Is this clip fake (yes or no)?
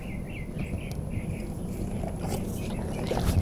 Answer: no